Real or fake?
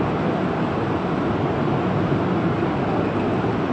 real